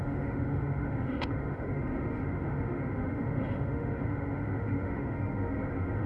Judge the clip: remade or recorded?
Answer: remade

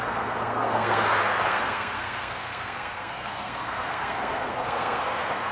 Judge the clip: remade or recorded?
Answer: remade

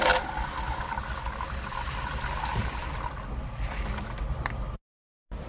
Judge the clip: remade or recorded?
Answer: recorded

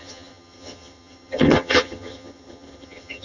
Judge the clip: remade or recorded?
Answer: remade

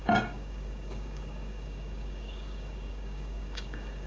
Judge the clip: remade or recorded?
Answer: remade